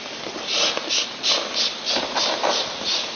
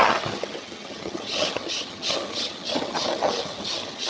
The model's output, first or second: second